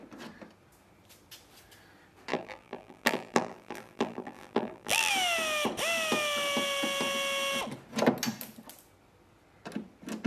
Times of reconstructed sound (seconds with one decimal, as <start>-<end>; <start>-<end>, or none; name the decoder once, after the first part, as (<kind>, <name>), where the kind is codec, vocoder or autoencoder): 2.3-5.1 (vocoder, BigVGAN v2)